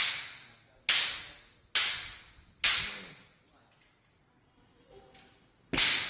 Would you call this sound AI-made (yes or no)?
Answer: no